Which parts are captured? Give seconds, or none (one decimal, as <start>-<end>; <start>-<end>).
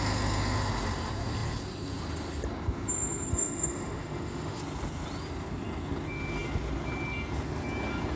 0.0-3.3; 4.6-8.2